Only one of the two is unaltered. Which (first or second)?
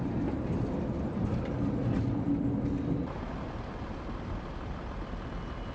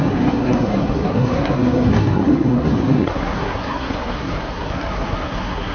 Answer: first